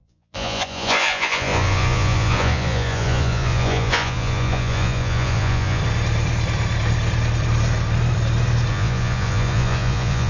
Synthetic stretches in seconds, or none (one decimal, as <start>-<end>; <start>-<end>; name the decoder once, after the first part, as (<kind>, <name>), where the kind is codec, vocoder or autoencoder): 0.0-5.8 (vocoder, Vocos); 8.7-10.3